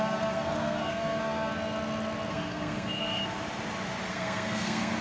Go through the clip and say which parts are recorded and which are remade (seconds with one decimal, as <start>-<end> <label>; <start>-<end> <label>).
0.0-1.5 remade; 1.5-2.3 recorded; 2.3-3.2 remade; 3.2-4.1 recorded; 4.1-5.0 remade